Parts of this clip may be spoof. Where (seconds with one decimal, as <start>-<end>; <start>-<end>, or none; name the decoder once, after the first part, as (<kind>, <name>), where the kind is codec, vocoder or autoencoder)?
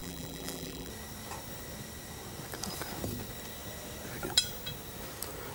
0.0-0.9 (vocoder, BigVGAN v2)